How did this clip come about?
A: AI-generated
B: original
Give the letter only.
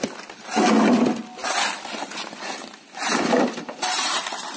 B